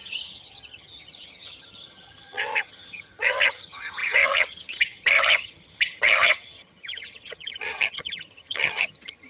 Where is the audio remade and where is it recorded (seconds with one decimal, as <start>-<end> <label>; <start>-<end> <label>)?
0.0-9.3 remade